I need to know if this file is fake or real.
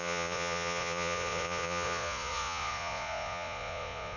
fake